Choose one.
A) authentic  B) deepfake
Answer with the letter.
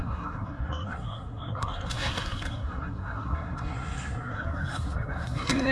B